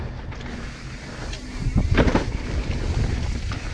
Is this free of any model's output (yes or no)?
yes